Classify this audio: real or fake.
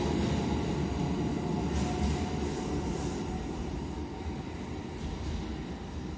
real